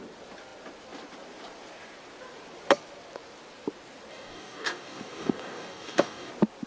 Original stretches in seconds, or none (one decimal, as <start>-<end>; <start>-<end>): 0.0-4.1; 6.3-6.7